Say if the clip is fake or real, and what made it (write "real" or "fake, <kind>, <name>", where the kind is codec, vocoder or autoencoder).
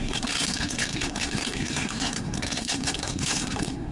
fake, codec, SNAC